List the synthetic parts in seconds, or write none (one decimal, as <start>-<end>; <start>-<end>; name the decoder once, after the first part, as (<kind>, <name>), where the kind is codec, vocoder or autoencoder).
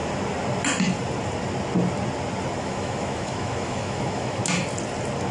2.6-4.4 (autoencoder, DAC-VAE)